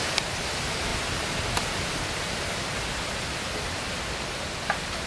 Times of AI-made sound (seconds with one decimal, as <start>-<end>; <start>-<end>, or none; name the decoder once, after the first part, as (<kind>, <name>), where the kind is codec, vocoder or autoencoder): none